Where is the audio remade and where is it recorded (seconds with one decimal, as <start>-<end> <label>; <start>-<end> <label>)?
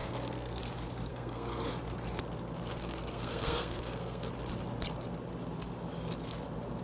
0.0-0.6 remade; 0.6-1.1 recorded; 1.1-1.7 remade; 1.7-2.7 recorded; 2.7-4.3 remade; 4.3-6.8 recorded